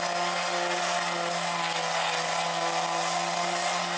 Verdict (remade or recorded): recorded